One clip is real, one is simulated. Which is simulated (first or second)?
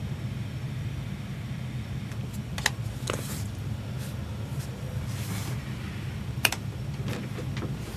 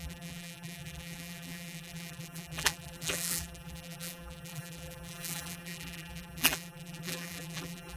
second